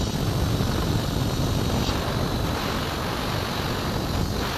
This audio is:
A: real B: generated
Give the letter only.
A